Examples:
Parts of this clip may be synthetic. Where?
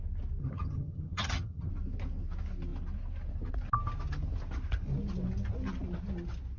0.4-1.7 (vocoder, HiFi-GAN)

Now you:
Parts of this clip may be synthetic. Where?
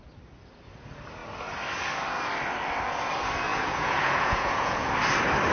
3.5-4.9 (vocoder, Vocos)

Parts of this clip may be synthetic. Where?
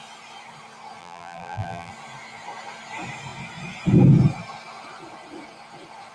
1.0-1.9 (vocoder, BigVGAN v2)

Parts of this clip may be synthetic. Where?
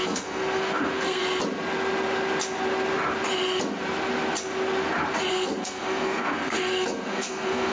0.0-1.2 (codec, SNAC); 5.3-7.7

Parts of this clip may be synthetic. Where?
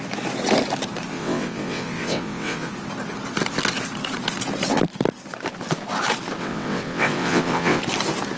1.1-2.7 (vocoder, WaveNeXt); 6.4-7.8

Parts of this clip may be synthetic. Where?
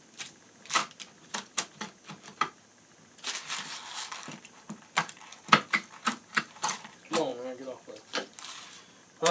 0.0-0.8 (vocoder, BigVGAN v2); 4.4-5.3; 6.4-7.3; 8.6-9.3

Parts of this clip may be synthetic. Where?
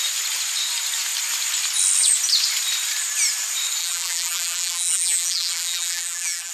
3.8-6.5 (vocoder, BigVGAN v2)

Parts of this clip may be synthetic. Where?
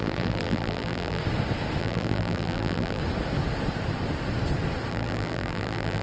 0.0-1.2 (vocoder, BigVGAN v2); 1.8-3.0; 4.9-6.0